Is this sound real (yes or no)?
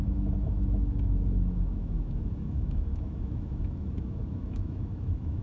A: no